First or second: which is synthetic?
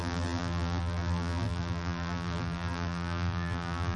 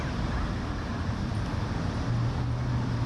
first